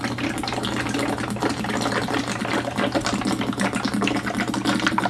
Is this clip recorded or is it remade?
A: recorded